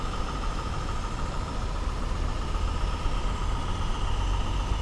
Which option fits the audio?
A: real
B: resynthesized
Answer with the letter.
A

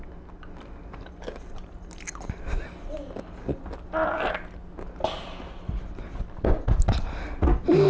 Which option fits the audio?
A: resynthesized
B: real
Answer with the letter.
B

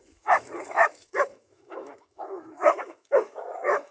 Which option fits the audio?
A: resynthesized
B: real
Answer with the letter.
A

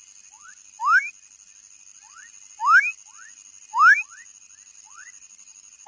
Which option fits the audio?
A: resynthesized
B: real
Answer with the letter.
B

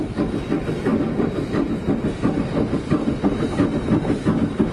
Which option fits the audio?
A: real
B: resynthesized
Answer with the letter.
A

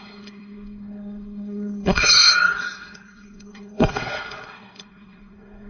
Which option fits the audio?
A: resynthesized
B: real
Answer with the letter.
A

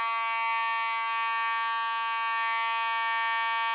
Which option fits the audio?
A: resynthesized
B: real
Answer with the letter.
B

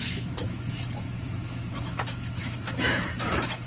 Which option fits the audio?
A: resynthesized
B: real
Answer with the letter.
A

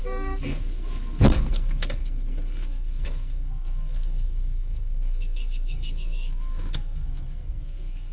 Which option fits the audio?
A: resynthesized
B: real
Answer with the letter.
A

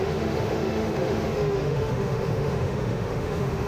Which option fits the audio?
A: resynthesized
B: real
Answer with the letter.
A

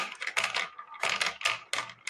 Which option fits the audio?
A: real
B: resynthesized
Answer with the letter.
A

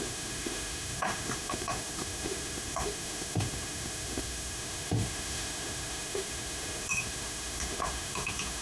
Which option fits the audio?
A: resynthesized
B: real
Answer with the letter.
A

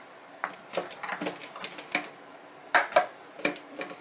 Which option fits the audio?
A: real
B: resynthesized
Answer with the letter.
A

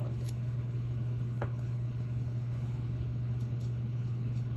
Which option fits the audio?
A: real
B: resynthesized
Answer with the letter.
B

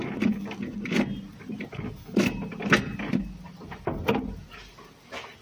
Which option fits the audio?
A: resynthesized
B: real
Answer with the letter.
B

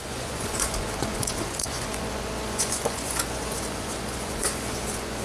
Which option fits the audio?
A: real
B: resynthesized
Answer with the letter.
B